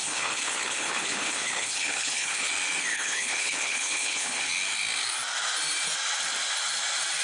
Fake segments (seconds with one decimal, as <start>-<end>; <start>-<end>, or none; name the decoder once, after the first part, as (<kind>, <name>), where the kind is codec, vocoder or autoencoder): 0.0-2.5 (codec, HILCodec); 2.9-4.4